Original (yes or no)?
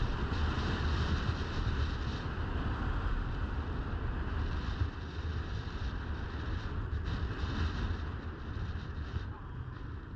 yes